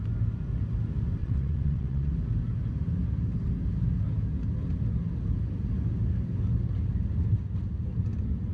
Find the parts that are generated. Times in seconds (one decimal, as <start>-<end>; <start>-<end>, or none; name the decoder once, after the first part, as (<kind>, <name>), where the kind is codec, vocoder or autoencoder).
1.2-2.1 (vocoder, WaveNeXt)